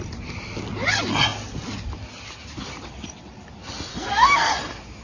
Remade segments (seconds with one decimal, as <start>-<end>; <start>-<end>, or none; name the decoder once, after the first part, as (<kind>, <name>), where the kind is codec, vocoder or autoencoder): 3.9-4.5 (codec, SNAC)